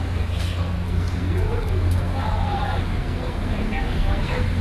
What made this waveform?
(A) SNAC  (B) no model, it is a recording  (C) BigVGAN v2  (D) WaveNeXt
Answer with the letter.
A